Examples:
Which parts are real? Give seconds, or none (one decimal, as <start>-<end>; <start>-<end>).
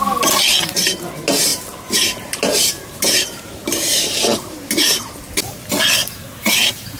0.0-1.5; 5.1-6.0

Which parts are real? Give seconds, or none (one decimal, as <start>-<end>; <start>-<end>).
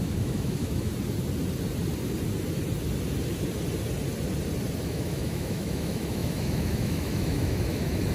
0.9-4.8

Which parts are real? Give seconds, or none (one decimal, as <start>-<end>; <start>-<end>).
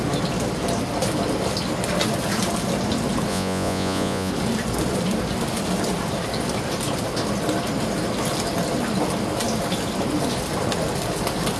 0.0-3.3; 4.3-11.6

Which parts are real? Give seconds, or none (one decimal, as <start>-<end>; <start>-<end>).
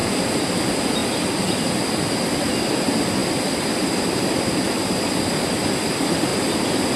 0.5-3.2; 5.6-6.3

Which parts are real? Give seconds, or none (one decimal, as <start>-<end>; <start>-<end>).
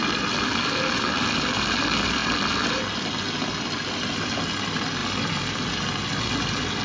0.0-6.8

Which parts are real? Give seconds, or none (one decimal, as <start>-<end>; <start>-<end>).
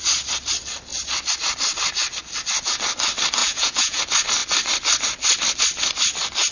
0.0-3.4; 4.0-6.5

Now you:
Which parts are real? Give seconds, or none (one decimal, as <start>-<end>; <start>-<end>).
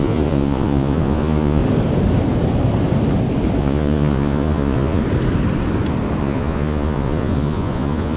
1.6-3.6; 5.0-6.2